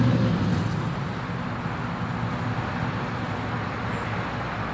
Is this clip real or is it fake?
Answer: real